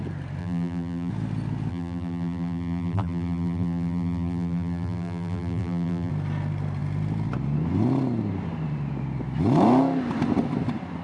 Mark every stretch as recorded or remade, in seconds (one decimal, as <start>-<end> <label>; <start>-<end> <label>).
0.0-0.4 recorded; 0.4-1.1 remade; 1.1-1.7 recorded; 1.7-6.1 remade; 6.1-11.0 recorded

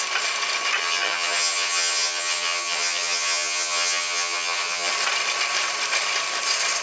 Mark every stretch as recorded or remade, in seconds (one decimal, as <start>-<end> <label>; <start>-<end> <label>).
0.0-0.8 recorded; 0.8-4.9 remade; 4.9-6.8 recorded

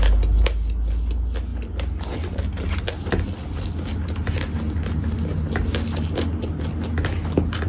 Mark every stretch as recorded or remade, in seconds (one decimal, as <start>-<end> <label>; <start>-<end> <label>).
0.0-7.7 recorded